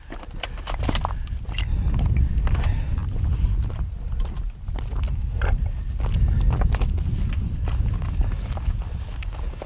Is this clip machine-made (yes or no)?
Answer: no